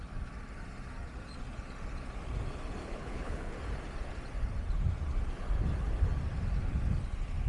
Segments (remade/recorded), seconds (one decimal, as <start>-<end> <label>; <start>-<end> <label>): 0.0-2.8 recorded; 2.8-3.5 remade; 3.5-7.5 recorded